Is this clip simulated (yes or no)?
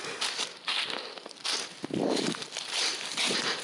no